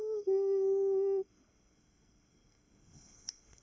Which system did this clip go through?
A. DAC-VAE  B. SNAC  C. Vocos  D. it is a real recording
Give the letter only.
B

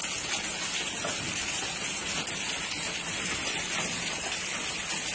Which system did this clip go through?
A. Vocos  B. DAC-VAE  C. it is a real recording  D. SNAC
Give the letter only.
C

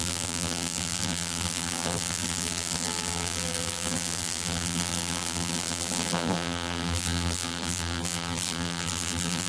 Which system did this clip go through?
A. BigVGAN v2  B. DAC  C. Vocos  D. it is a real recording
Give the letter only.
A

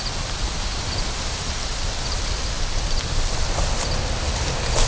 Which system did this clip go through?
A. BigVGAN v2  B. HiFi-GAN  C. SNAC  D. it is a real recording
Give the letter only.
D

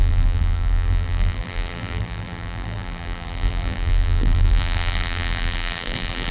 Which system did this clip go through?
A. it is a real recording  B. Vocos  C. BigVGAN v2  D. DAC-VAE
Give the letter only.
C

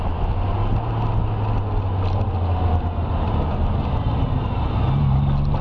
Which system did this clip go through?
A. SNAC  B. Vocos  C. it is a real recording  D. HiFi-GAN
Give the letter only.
C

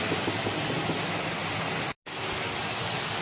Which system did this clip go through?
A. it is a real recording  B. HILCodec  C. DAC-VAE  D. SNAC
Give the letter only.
A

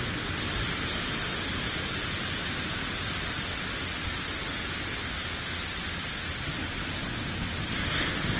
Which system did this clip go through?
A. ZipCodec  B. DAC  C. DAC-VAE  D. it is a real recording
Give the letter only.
D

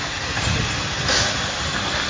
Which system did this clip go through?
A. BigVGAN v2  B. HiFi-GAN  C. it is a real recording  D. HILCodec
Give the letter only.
C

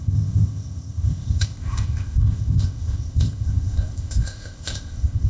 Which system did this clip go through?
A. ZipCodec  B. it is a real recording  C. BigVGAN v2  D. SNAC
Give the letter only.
A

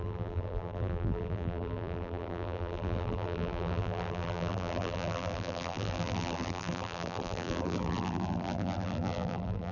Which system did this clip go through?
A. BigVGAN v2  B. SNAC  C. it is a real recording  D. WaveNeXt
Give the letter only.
A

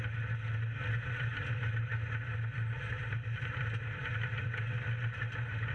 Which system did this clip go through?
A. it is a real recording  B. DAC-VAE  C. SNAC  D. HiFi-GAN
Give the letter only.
A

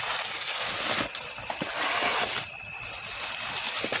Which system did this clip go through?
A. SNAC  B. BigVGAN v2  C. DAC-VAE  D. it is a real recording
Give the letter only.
D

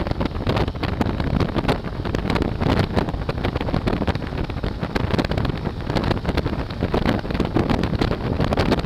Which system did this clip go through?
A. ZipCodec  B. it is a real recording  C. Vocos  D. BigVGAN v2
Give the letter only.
B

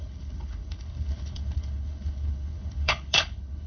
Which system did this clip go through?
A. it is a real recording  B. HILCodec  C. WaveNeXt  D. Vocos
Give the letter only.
B